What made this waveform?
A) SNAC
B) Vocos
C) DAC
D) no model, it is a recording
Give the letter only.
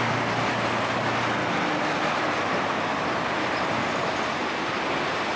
D